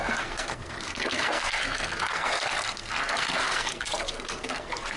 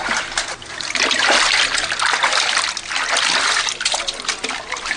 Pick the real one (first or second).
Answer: second